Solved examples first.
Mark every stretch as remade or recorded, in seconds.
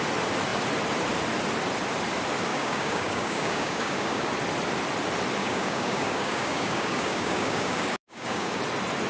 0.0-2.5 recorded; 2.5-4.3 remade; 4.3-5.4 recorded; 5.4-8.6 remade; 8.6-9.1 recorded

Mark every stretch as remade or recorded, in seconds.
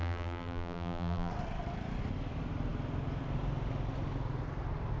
0.0-1.3 remade; 1.3-5.0 recorded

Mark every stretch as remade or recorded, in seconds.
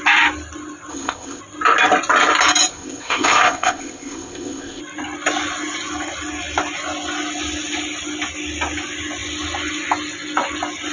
0.0-0.9 recorded; 0.9-1.4 remade; 1.4-2.7 recorded; 2.7-4.8 remade; 4.8-10.9 recorded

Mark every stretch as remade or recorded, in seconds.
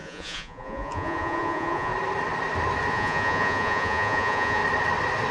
0.0-1.9 remade; 1.9-2.9 recorded; 2.9-4.6 remade; 4.6-5.3 recorded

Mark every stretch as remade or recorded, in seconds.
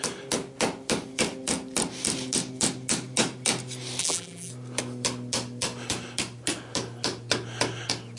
0.0-4.0 recorded; 4.0-4.5 remade; 4.5-8.2 recorded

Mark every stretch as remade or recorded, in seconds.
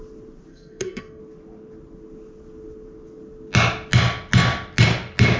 0.0-0.5 recorded; 0.5-1.2 remade; 1.2-5.4 recorded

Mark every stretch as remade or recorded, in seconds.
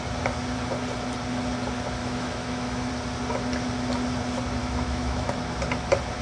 0.0-2.0 recorded; 2.0-2.9 remade; 2.9-4.6 recorded; 4.6-5.3 remade; 5.3-6.2 recorded